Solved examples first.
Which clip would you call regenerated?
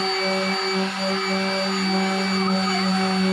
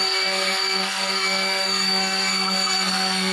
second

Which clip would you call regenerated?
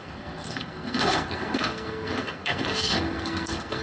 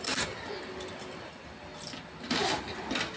first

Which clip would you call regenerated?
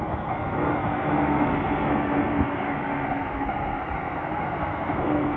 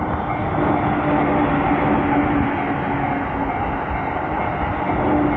first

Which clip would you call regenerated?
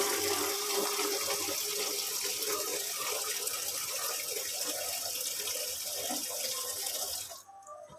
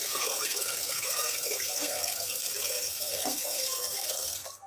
second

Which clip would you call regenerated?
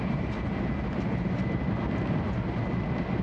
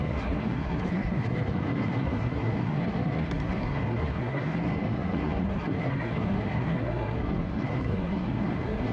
second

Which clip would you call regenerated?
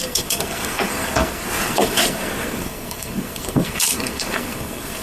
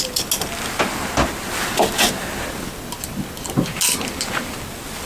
first